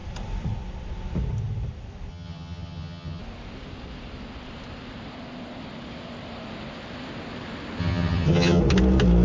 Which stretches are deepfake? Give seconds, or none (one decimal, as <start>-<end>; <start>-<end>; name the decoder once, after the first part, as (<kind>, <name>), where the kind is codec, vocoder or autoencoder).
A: 2.1-3.2 (vocoder, HiFi-GAN); 7.8-8.6